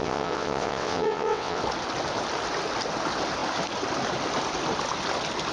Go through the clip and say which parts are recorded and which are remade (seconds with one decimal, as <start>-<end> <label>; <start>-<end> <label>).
0.0-1.6 remade; 1.6-5.5 recorded

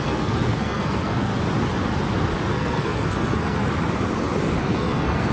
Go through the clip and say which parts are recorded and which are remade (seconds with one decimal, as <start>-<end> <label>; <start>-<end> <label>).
0.0-1.3 remade; 1.3-2.5 recorded; 2.5-3.7 remade; 3.7-4.6 recorded; 4.6-5.3 remade

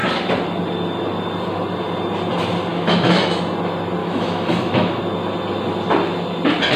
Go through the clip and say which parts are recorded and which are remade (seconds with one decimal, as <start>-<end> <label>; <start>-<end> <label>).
0.0-2.7 recorded; 2.7-3.4 remade; 3.4-4.0 recorded; 4.0-5.0 remade; 5.0-6.8 recorded

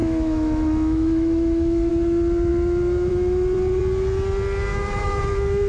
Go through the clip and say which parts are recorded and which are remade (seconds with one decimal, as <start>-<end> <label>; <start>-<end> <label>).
0.0-1.9 remade; 1.9-4.7 recorded; 4.7-5.7 remade

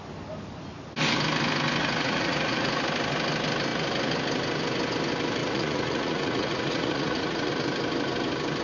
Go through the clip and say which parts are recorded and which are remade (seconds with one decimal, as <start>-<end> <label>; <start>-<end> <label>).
0.0-1.8 recorded; 1.8-2.8 remade; 2.8-5.4 recorded; 5.4-7.5 remade; 7.5-8.6 recorded

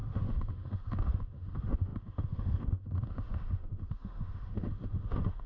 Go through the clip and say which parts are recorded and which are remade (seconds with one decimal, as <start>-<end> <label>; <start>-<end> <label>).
0.0-5.5 remade

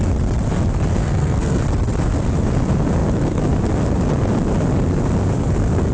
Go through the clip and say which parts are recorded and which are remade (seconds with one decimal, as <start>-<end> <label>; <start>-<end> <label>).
0.0-0.9 recorded; 0.9-1.6 remade; 1.6-5.9 recorded

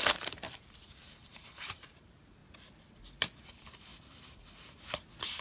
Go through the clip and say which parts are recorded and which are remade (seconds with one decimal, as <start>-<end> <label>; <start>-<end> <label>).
0.0-2.4 remade; 2.4-3.5 recorded; 3.5-3.9 remade; 3.9-5.4 recorded